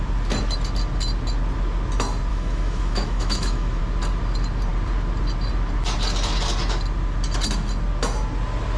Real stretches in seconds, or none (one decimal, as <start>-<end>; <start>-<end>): 0.0-2.3; 3.8-8.8